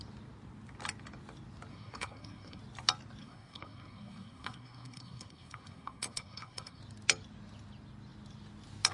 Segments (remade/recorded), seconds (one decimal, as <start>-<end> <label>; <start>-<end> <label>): 0.0-1.7 recorded; 1.7-2.6 remade; 2.6-3.2 recorded; 3.2-6.8 remade; 6.8-8.9 recorded